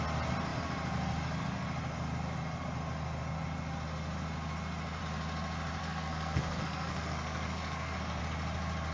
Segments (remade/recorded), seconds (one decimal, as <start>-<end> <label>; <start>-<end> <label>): 0.0-5.8 recorded; 5.8-8.2 remade; 8.2-8.9 recorded